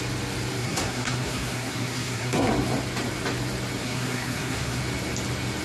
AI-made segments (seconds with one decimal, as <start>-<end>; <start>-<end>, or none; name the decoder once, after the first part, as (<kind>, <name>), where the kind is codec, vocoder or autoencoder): 0.6-2.5 (codec, SNAC); 3.8-4.8